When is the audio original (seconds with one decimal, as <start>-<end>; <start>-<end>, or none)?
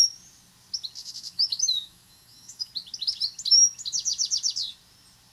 0.0-1.0; 2.7-5.3